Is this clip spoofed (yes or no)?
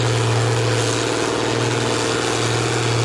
no